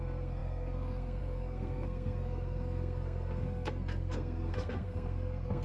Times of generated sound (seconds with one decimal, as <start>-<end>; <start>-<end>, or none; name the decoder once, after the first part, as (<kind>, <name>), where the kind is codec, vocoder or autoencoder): 0.0-5.6 (codec, SNAC)